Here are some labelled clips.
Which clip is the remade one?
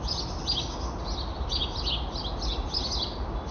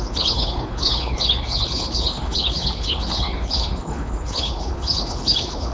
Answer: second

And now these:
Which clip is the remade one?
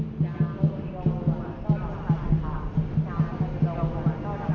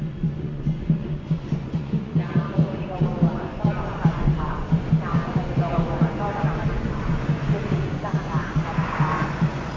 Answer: second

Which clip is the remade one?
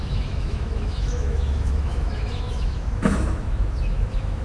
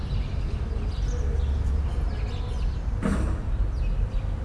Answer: first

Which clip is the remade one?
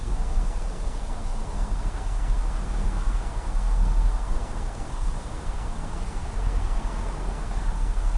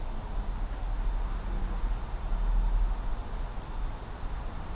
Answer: first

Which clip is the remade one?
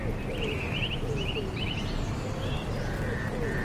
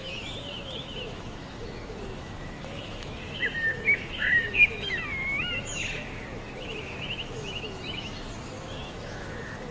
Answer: second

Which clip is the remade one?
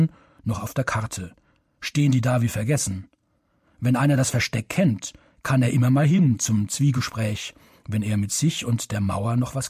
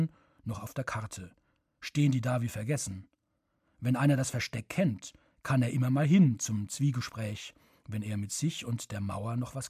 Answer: first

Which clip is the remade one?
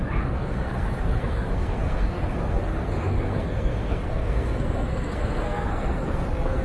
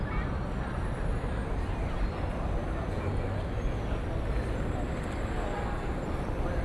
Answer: first